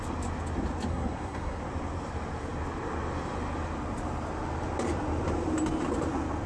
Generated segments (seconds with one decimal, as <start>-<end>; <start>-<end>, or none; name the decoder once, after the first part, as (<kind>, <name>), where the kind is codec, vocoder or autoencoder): 0.9-1.6 (codec, SNAC)